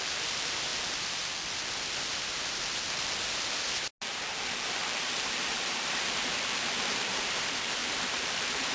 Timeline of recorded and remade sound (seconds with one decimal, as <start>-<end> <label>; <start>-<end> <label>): 0.0-0.7 remade; 0.7-4.3 recorded; 4.3-8.7 remade